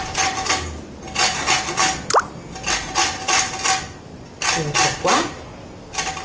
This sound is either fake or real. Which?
real